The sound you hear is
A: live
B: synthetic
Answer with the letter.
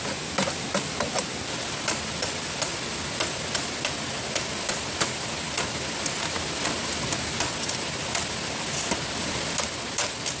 A